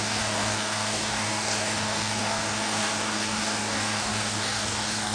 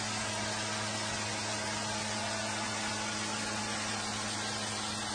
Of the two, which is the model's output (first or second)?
first